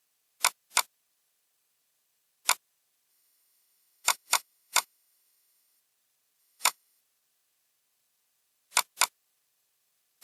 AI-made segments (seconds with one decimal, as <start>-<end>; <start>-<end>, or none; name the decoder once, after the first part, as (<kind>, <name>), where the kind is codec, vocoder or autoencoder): 3.1-5.8 (autoencoder, DAC-VAE); 6.4-7.0